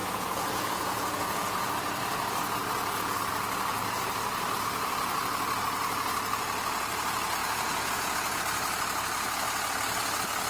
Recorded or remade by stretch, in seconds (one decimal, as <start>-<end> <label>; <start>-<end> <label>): 0.0-1.7 remade; 1.7-7.4 recorded; 7.4-8.4 remade; 8.4-10.5 recorded